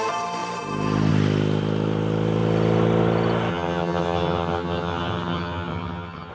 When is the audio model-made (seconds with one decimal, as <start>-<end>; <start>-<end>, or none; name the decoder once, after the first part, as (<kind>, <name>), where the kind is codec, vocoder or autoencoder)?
3.5-6.3 (vocoder, HiFi-GAN)